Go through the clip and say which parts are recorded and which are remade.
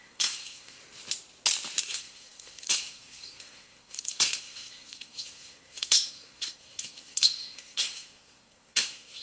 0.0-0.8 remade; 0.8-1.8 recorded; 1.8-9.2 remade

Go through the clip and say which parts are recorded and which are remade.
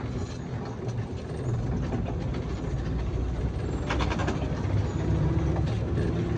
0.0-6.4 recorded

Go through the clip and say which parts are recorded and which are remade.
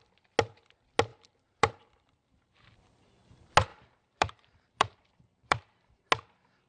0.0-1.1 recorded; 1.1-2.5 remade; 2.5-3.7 recorded; 3.7-6.0 remade; 6.0-6.7 recorded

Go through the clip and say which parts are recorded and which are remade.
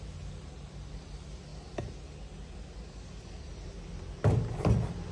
0.0-5.1 recorded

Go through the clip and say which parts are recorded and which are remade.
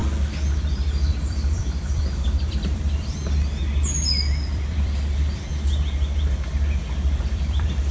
0.0-1.1 recorded; 1.1-3.2 remade; 3.2-4.3 recorded; 4.3-5.5 remade; 5.5-7.2 recorded; 7.2-7.9 remade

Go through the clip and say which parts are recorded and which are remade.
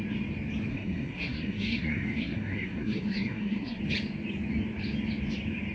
0.0-0.7 recorded; 0.7-3.8 remade; 3.8-5.7 recorded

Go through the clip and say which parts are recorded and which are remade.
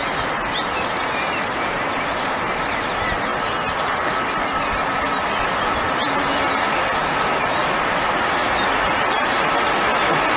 0.0-2.6 remade; 2.6-3.3 recorded; 3.3-6.4 remade; 6.4-7.6 recorded; 7.6-8.9 remade; 8.9-10.4 recorded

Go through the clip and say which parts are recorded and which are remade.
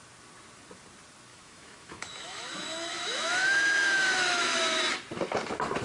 0.0-1.3 recorded; 1.3-4.8 remade; 4.8-5.8 recorded